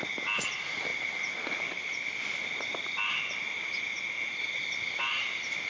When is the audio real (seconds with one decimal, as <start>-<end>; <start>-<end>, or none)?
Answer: 0.0-5.7